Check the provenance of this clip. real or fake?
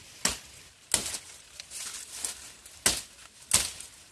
real